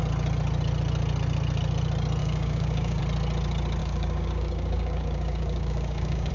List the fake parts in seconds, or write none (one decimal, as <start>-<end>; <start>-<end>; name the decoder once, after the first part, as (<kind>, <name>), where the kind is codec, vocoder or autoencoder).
2.2-3.0 (codec, DAC); 3.8-6.3